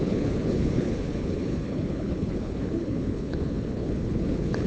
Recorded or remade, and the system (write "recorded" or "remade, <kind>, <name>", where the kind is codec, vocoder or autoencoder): remade, codec, HILCodec